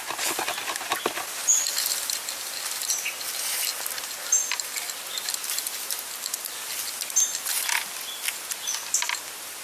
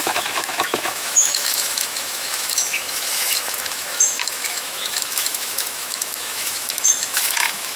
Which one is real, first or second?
first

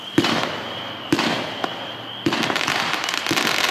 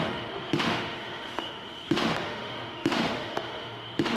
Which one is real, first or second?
first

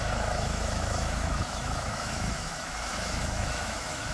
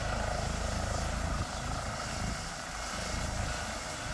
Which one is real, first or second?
second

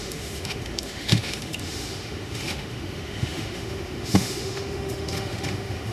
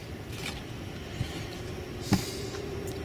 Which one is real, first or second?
second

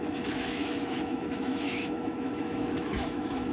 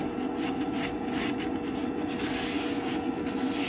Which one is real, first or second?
second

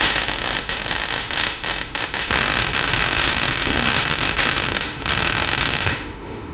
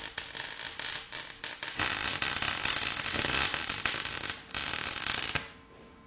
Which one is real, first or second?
second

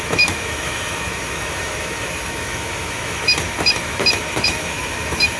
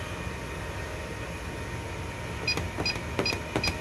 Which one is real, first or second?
second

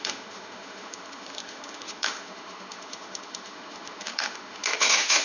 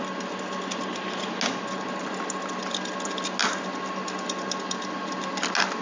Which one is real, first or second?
second